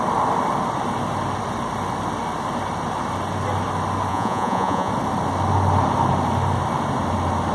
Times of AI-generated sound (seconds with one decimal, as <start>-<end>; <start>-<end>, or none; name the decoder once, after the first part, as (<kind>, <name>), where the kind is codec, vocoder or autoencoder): 4.1-4.9 (vocoder, Vocos)